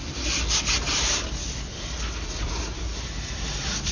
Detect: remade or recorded recorded